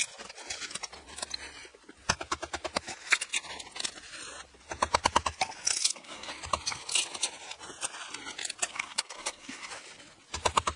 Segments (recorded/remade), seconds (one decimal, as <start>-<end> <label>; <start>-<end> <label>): 0.0-5.8 recorded; 5.8-6.3 remade; 6.3-8.7 recorded; 8.7-9.7 remade; 9.7-10.8 recorded